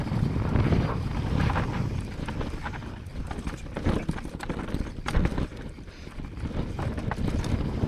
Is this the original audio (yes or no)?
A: yes